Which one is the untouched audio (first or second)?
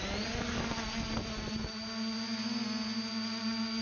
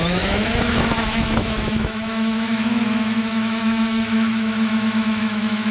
first